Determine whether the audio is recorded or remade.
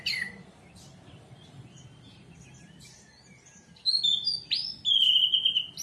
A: recorded